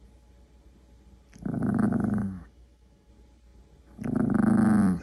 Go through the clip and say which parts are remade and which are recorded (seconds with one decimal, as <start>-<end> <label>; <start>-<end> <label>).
0.0-2.2 recorded; 2.2-3.1 remade; 3.1-5.0 recorded